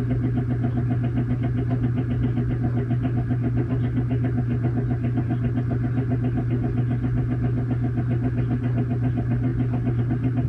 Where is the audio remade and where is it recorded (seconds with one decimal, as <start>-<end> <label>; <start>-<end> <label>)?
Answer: 0.0-10.5 recorded